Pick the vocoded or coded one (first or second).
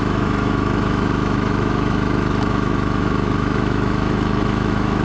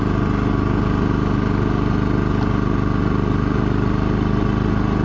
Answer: first